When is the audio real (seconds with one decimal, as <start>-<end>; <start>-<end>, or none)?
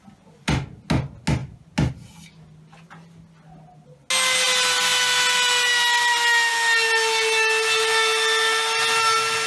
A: 0.0-9.5